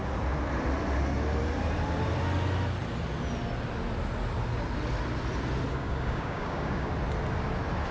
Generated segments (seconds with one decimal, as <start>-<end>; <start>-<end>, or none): 5.7-6.9